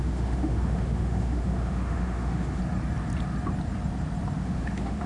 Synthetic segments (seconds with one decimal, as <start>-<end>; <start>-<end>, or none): 0.0-2.6; 4.4-5.1